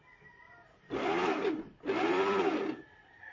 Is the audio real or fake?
real